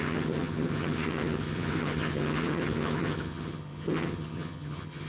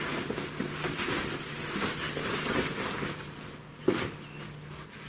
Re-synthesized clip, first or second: first